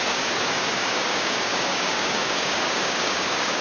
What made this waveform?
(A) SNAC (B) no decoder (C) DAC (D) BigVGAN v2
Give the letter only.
C